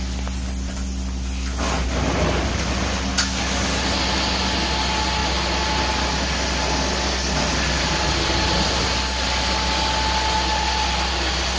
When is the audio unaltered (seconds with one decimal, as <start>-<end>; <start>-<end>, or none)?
0.0-11.6